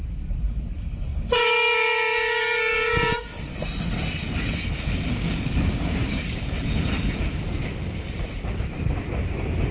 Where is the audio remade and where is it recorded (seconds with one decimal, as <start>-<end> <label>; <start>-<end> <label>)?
0.0-1.1 recorded; 1.1-3.5 remade; 3.5-5.1 recorded; 5.1-6.4 remade; 6.4-9.7 recorded